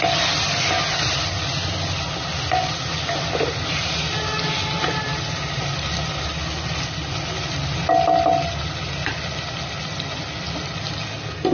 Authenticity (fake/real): real